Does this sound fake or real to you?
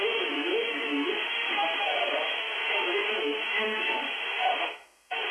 fake